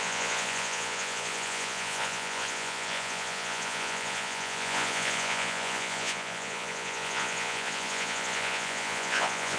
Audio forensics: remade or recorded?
remade